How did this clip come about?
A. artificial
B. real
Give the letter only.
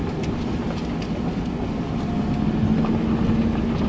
B